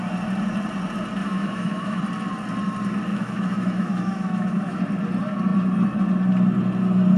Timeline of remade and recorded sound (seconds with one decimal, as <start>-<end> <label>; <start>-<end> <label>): 0.0-1.2 recorded; 1.2-2.0 remade; 2.0-3.1 recorded; 3.1-4.8 remade; 4.8-7.2 recorded